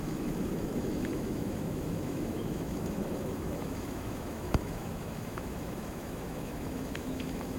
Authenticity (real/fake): fake